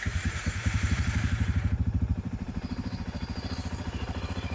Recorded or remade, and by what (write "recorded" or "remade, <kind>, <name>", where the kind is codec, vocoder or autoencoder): remade, vocoder, BigVGAN v2